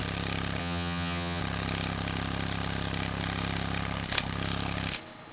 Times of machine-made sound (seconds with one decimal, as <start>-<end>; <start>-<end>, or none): 0.6-1.4